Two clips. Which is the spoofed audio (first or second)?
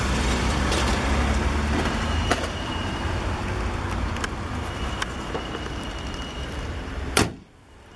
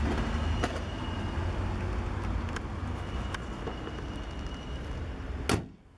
first